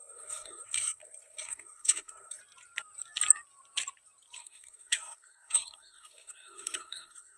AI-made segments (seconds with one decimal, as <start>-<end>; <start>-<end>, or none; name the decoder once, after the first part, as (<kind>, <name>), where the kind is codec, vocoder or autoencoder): 0.0-2.4 (codec, SNAC); 4.4-7.4